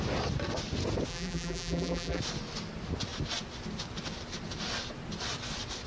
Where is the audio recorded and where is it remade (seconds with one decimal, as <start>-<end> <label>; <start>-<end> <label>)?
0.0-1.1 recorded; 1.1-2.2 remade; 2.2-5.9 recorded